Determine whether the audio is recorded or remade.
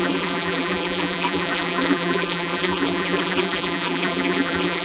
remade